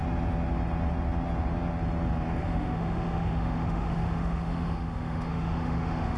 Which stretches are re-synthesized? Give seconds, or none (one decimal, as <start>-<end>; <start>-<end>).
2.4-6.2

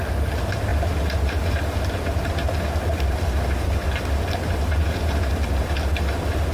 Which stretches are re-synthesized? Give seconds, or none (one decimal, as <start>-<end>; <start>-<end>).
none

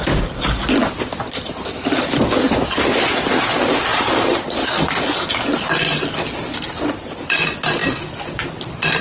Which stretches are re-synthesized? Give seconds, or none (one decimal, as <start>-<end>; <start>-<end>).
none

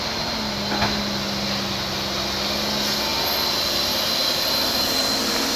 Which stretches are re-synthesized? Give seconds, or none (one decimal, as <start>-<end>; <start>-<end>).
none